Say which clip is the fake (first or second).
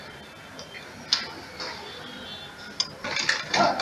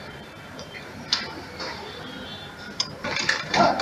second